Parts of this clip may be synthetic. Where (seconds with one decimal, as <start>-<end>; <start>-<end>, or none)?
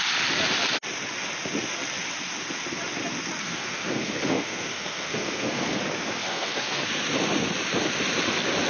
3.4-5.8; 6.2-6.9